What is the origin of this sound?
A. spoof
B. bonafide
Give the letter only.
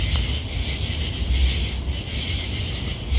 B